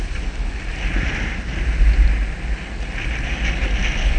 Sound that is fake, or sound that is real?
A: real